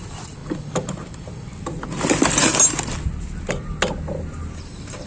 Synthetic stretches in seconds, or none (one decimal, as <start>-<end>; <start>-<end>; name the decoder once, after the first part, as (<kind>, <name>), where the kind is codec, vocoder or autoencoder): none